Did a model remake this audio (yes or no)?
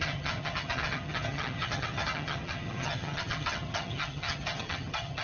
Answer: yes